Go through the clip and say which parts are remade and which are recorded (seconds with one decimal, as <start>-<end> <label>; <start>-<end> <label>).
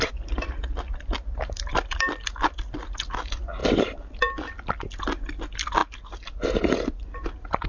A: 0.0-7.7 recorded